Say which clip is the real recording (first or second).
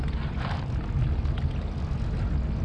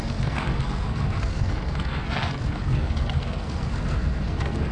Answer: first